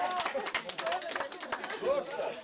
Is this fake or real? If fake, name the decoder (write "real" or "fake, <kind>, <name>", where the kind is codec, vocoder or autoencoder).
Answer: real